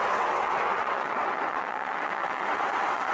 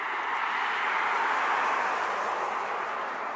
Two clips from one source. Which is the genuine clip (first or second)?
second